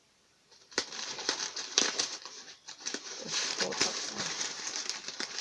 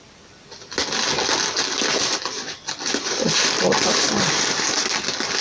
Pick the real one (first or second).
second